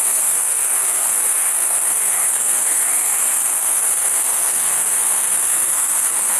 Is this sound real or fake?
fake